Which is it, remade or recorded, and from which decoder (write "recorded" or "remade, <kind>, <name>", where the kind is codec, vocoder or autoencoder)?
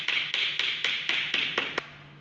recorded